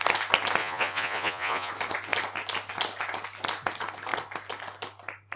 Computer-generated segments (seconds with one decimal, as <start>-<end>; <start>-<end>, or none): 0.6-1.7